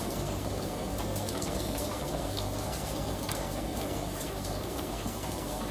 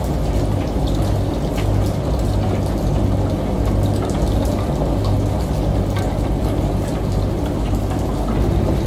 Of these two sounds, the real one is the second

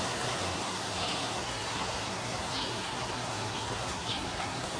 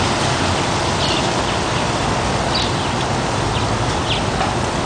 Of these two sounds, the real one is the second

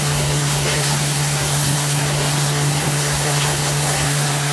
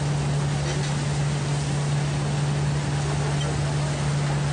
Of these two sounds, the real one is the second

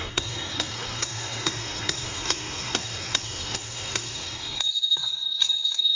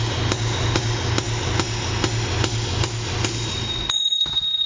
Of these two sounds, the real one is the second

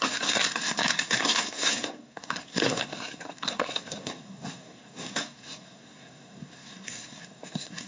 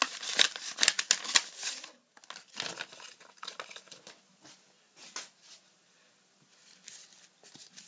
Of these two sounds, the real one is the second